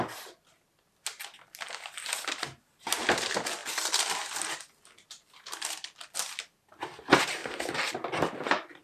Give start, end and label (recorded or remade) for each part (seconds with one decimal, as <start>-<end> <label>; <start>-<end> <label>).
0.0-7.4 recorded; 7.4-8.8 remade